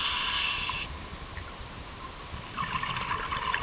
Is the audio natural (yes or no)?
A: yes